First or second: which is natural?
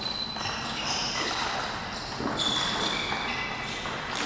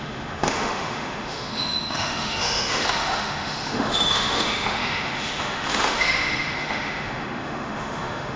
first